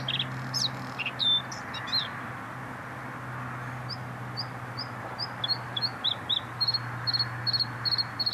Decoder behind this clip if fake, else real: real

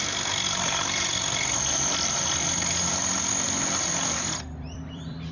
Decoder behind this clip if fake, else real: fake, vocoder, BigVGAN v2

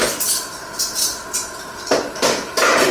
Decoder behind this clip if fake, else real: real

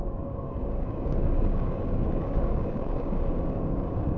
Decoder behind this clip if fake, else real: fake, codec, DAC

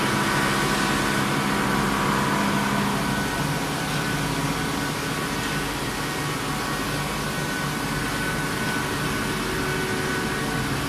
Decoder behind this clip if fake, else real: real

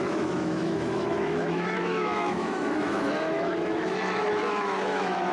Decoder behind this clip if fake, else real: fake, autoencoder, DAC-VAE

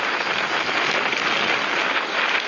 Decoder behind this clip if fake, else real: real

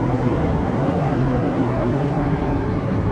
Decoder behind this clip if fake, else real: fake, codec, SNAC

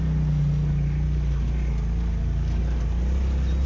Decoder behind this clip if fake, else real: real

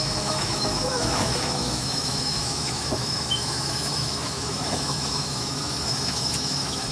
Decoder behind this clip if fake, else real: fake, autoencoder, DAC-VAE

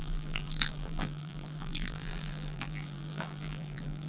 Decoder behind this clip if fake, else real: fake, vocoder, BigVGAN v2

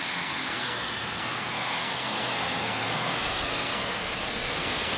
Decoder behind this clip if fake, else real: fake, codec, SNAC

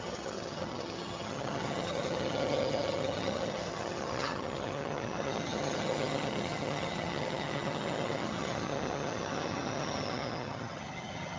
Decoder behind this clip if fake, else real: fake, vocoder, HiFi-GAN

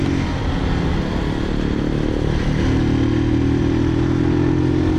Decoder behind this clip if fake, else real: real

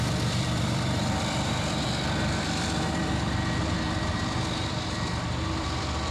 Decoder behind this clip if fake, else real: fake, vocoder, BigVGAN v2